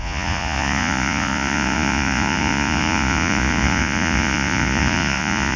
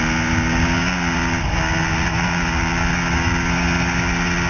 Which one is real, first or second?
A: second